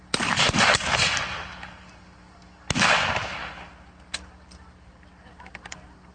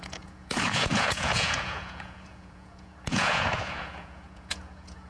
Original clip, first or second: first